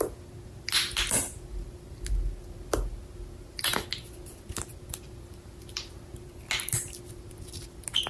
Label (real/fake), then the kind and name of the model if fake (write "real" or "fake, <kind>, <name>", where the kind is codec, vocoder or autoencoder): real